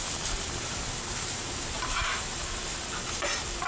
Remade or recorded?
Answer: recorded